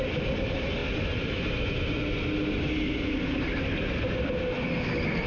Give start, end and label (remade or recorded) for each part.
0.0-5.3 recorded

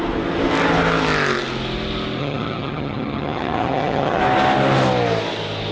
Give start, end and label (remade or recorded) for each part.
0.0-2.2 recorded; 2.2-4.2 remade; 4.2-5.7 recorded

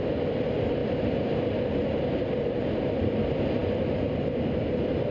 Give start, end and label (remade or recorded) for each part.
0.0-5.1 recorded

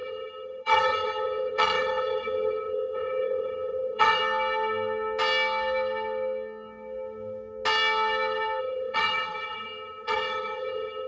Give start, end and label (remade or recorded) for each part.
0.0-4.2 remade; 4.2-8.6 recorded; 8.6-11.1 remade

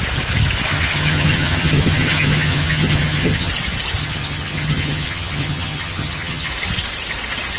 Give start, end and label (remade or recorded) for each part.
0.0-0.7 recorded; 0.7-3.5 remade; 3.5-4.0 recorded; 4.0-6.5 remade; 6.5-7.6 recorded

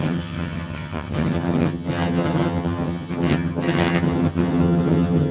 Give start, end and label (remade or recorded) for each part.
0.0-5.3 remade

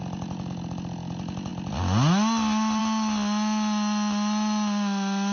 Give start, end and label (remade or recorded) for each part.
0.0-5.3 recorded